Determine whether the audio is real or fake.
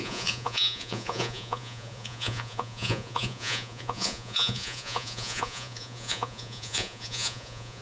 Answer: fake